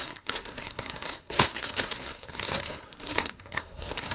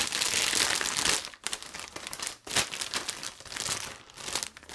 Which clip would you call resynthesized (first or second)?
first